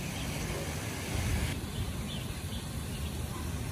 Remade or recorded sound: recorded